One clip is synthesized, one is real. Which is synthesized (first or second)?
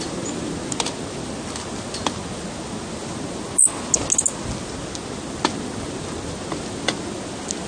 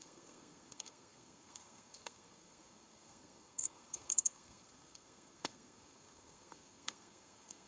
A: second